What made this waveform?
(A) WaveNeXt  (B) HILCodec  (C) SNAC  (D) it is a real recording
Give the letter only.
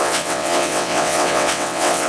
A